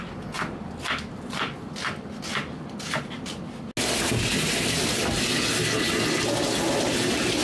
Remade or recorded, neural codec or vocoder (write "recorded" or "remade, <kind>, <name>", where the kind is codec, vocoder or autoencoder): recorded